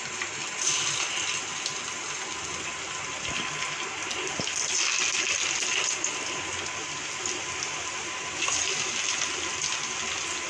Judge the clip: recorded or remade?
recorded